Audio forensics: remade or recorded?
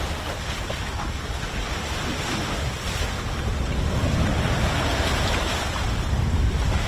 recorded